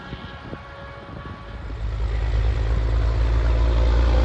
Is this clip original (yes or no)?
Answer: yes